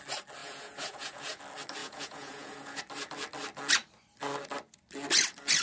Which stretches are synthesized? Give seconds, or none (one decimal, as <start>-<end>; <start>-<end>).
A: 0.4-1.4; 1.8-2.8